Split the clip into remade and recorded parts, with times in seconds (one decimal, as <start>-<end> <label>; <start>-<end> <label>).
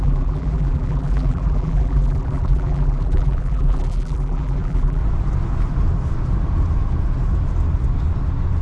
0.0-5.0 remade; 5.0-8.6 recorded